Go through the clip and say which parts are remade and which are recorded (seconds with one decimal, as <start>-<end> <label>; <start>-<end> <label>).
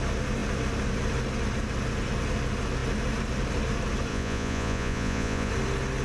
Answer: 0.0-4.1 recorded; 4.1-5.5 remade; 5.5-6.0 recorded